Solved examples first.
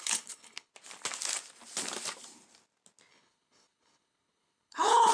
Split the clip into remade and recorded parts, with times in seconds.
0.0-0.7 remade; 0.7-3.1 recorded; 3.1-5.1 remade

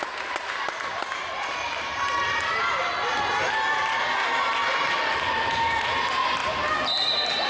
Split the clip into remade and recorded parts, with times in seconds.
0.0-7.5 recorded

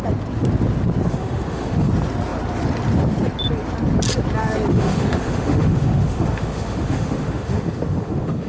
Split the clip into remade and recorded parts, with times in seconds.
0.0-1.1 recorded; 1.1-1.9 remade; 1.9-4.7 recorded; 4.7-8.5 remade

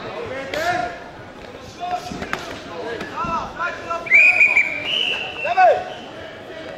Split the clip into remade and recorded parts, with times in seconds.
0.0-2.8 recorded; 2.8-4.2 remade; 4.2-4.8 recorded; 4.8-6.0 remade; 6.0-6.8 recorded

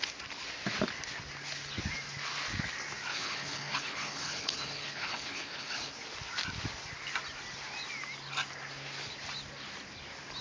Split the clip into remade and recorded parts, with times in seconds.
0.0-3.1 recorded; 3.1-5.9 remade; 5.9-10.4 recorded

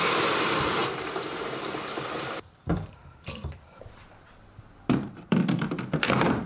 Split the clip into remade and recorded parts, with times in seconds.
0.0-6.5 remade